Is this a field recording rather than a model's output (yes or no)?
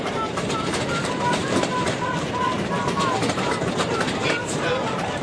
no